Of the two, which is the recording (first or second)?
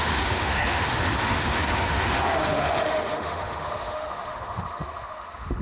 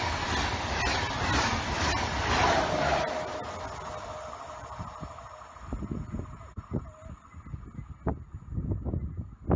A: second